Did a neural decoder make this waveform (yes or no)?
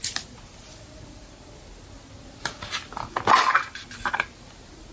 no